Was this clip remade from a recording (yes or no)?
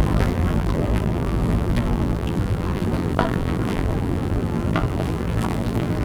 yes